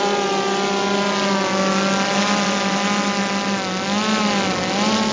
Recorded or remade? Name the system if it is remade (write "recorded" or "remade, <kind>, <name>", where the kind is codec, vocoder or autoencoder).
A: recorded